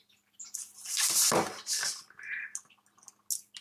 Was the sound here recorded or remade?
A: recorded